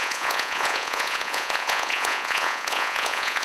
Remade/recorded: remade